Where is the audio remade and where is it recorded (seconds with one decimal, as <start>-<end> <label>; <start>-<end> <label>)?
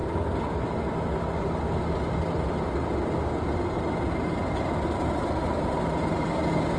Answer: 0.0-4.1 recorded; 4.1-6.8 remade